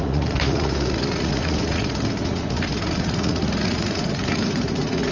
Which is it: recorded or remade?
remade